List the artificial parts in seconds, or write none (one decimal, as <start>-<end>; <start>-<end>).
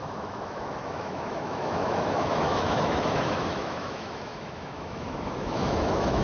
0.0-6.2